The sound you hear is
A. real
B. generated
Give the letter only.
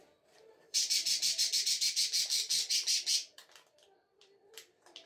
B